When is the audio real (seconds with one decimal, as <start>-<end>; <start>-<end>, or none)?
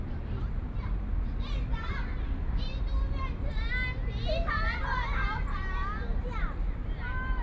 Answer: 0.0-1.7; 2.6-6.2; 7.0-7.4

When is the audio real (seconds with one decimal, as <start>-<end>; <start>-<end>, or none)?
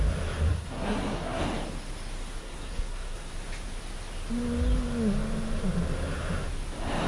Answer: 0.0-0.5; 1.4-2.4; 3.3-7.1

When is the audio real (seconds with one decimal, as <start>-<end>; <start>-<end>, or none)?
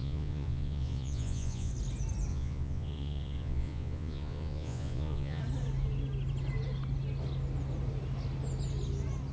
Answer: 1.7-2.3; 5.4-9.3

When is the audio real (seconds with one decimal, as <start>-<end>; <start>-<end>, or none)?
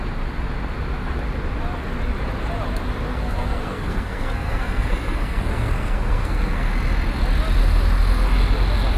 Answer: 0.0-3.1; 6.7-9.0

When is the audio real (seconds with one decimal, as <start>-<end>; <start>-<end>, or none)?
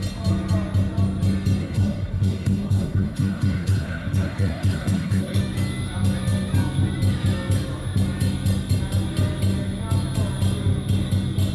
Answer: 0.0-1.6; 5.4-11.5